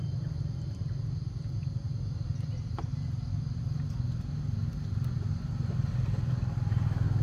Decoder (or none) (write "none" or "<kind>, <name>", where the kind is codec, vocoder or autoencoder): none